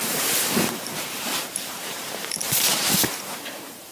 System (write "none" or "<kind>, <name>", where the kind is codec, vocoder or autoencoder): vocoder, BigVGAN v2